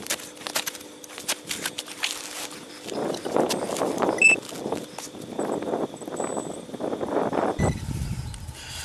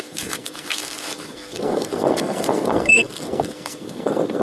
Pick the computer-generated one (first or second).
second